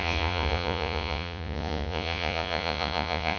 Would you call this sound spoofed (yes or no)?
yes